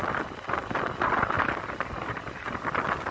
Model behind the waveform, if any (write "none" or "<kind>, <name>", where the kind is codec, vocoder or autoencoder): none